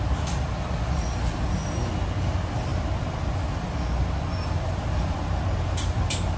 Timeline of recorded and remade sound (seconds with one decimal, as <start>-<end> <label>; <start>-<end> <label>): 0.0-6.4 recorded